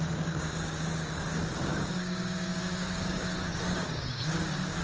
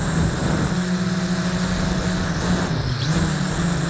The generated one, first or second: first